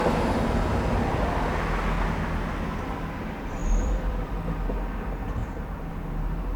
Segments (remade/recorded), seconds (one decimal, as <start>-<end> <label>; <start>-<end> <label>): 0.0-3.6 recorded; 3.6-4.5 remade; 4.5-6.6 recorded